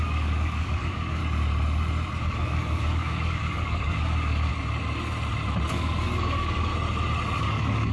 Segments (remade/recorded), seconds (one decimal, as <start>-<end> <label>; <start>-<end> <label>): 0.0-1.2 remade; 1.2-2.2 recorded; 2.2-4.5 remade; 4.5-5.7 recorded; 5.7-6.7 remade; 6.7-7.4 recorded; 7.4-7.9 remade